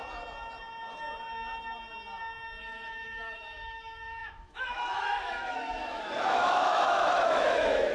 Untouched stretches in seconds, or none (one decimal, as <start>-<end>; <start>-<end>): 0.0-2.6